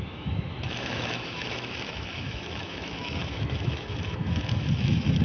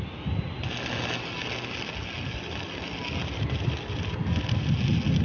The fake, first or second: first